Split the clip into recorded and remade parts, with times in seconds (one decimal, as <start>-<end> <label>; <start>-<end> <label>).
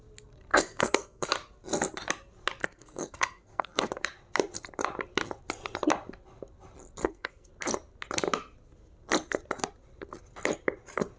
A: 0.0-0.5 recorded; 0.5-1.3 remade; 1.3-2.6 recorded; 2.6-3.9 remade; 3.9-7.0 recorded; 7.0-7.5 remade; 7.5-11.2 recorded